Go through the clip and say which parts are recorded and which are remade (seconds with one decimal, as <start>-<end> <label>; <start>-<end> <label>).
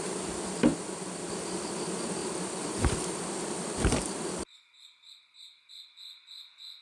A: 0.0-2.2 recorded; 2.2-5.7 remade; 5.7-6.8 recorded